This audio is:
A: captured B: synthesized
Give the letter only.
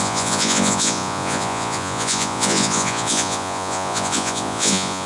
B